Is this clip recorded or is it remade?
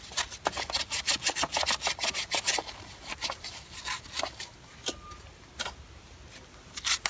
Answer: recorded